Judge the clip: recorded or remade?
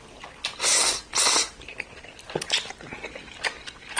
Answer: recorded